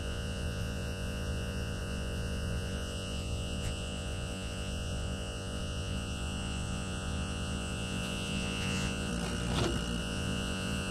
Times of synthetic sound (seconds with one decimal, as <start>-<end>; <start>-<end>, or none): 0.0-9.1; 10.0-10.9